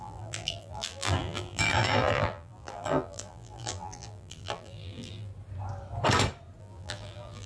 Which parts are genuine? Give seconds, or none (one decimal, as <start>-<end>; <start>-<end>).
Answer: 5.3-6.6